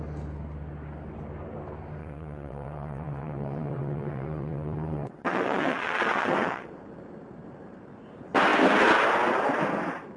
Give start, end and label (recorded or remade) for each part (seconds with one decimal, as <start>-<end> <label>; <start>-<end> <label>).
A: 0.0-2.0 recorded; 2.0-6.7 remade; 6.7-10.2 recorded